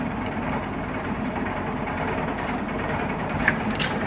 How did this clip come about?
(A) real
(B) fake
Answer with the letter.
B